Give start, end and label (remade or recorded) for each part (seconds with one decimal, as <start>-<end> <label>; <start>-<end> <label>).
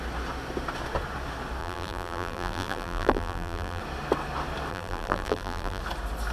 0.0-1.6 recorded; 1.6-3.8 remade; 3.8-4.7 recorded; 4.7-5.8 remade; 5.8-6.3 recorded